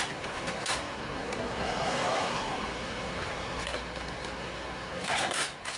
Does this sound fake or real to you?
fake